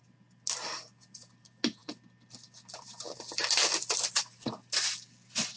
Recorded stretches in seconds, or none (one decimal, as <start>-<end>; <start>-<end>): 0.0-5.6